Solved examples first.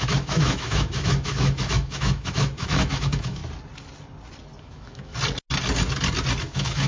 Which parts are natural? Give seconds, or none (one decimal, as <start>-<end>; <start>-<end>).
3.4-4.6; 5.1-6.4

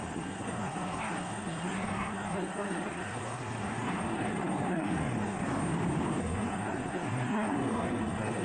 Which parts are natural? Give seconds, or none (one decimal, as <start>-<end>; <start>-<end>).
5.4-6.2

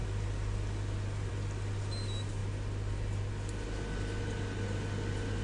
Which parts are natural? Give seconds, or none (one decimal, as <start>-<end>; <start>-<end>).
0.0-5.4